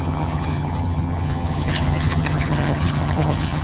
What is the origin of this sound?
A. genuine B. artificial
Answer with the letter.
B